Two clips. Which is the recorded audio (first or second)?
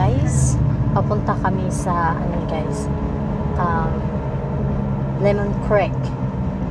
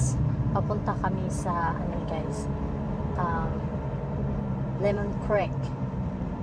first